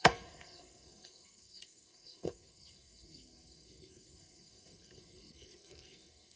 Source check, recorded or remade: remade